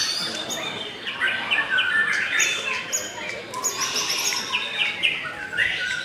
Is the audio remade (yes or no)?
no